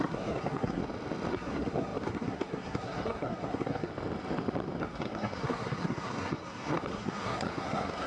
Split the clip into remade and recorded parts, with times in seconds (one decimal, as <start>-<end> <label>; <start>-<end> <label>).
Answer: 0.0-0.8 remade; 0.8-1.3 recorded; 1.3-3.9 remade; 3.9-4.8 recorded; 4.8-8.1 remade